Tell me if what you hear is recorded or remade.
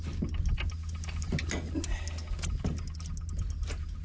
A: recorded